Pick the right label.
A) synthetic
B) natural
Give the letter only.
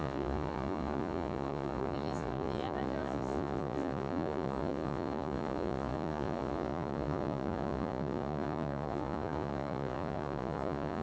A